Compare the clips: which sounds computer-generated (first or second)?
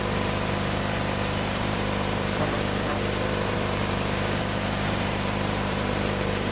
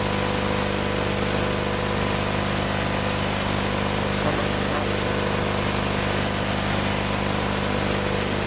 first